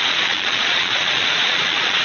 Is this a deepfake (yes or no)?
yes